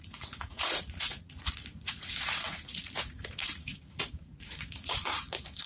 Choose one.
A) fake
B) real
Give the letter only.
A